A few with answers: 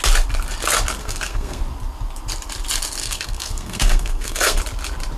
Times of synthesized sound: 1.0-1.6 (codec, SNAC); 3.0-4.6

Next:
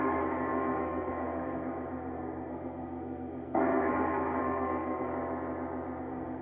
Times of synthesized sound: 0.0-5.1 (codec, SNAC); 6.0-6.4

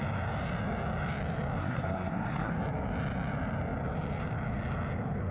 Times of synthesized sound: 1.6-2.5 (codec, SNAC)

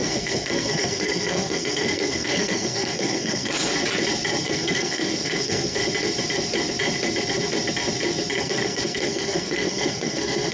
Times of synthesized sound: 0.0-3.7 (codec, SNAC); 4.4-5.8; 8.4-10.5

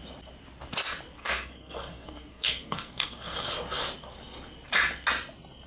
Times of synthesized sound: 1.2-3.5 (codec, SNAC)